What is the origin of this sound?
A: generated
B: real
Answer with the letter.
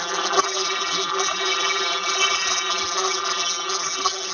A